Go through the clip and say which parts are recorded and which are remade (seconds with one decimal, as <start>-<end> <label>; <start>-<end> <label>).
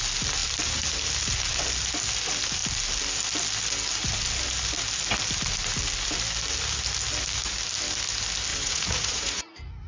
0.0-8.5 recorded; 8.5-9.9 remade